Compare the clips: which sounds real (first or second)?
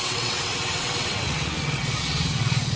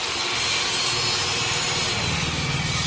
second